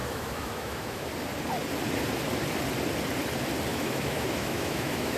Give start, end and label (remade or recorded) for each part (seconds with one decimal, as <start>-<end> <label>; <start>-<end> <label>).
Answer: 0.0-1.1 remade; 1.1-3.7 recorded; 3.7-5.2 remade